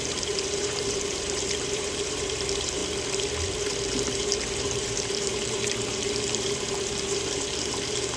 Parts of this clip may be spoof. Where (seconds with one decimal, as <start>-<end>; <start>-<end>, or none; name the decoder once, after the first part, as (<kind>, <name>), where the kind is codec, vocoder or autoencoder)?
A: 0.0-2.8 (vocoder, BigVGAN v2); 3.6-8.2